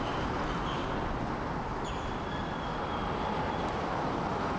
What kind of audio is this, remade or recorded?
recorded